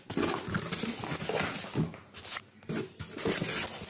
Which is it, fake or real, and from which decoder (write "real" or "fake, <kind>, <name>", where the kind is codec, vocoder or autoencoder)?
real